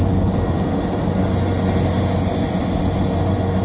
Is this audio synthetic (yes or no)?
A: no